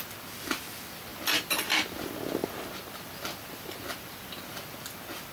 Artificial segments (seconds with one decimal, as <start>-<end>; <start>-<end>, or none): none